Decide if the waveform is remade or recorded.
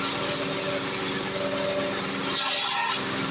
remade